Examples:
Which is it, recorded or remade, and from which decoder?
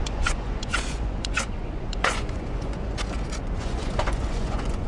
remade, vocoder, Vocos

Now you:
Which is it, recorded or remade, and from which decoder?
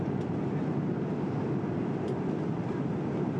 recorded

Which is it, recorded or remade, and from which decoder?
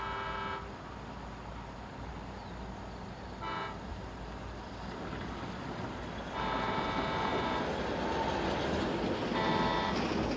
recorded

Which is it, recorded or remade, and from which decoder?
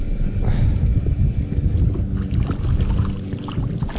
recorded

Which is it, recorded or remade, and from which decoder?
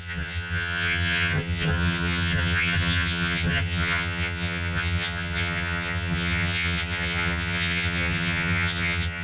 remade, vocoder, HiFi-GAN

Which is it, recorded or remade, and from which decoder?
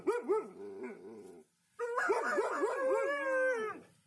recorded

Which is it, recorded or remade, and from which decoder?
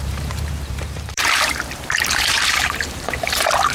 remade, vocoder, BigVGAN v2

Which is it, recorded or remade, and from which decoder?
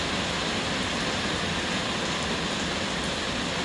recorded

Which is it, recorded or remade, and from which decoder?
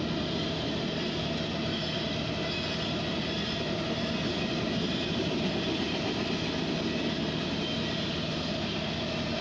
recorded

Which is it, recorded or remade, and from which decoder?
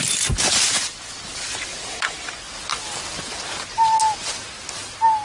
recorded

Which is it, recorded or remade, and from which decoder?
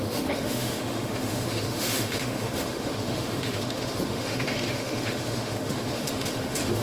remade, autoencoder, DAC-VAE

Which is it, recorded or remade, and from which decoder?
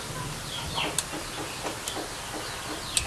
recorded